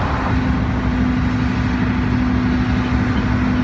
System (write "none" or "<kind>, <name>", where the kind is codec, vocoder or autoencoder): none